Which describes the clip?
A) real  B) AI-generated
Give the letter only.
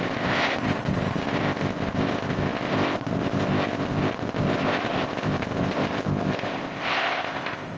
B